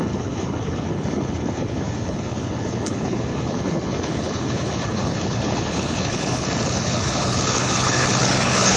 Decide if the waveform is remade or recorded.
remade